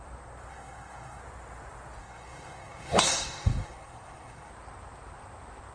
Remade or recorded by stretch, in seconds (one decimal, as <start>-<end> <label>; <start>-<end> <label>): 0.0-0.5 recorded; 0.5-1.2 remade; 1.2-2.0 recorded; 2.0-4.5 remade; 4.5-5.7 recorded